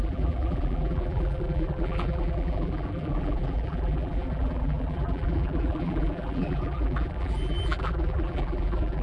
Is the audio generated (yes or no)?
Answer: yes